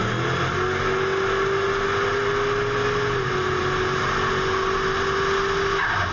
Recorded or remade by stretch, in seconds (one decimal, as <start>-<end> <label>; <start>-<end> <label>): 0.0-6.1 recorded